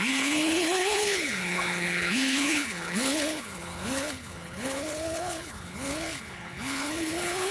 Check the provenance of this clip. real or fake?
fake